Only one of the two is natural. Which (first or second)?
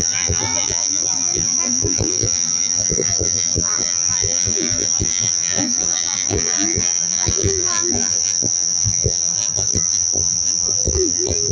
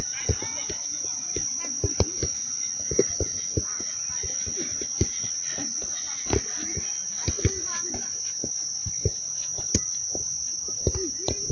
second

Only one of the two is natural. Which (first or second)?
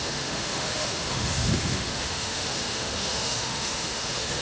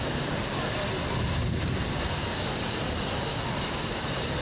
second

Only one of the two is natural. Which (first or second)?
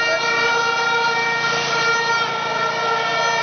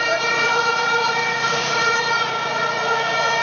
first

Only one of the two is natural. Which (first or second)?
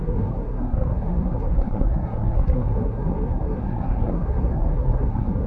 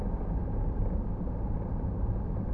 second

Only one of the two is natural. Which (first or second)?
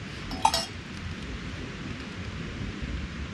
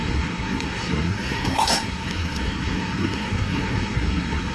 first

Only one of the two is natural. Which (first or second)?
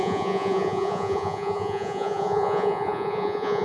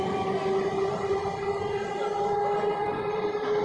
second